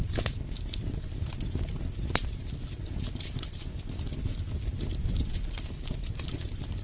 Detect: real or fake real